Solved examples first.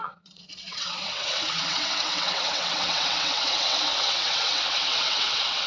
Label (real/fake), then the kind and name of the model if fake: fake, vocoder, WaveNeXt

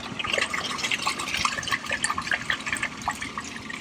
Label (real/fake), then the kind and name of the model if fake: real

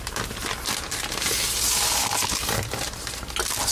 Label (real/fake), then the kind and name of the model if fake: real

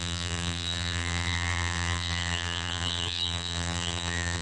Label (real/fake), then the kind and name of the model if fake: fake, vocoder, BigVGAN v2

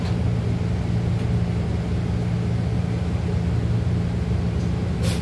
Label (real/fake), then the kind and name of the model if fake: real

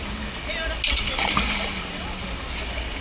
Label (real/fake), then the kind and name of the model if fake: real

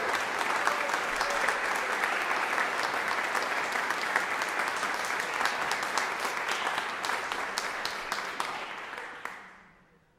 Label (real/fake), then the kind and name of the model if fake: real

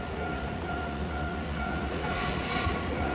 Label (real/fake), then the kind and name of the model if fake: fake, vocoder, Vocos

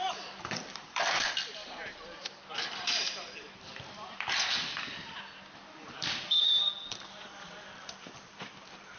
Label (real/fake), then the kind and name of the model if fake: fake, vocoder, BigVGAN v2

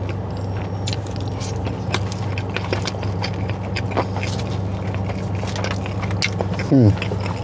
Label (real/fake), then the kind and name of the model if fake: real